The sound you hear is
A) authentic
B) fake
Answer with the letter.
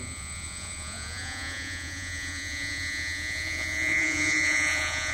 B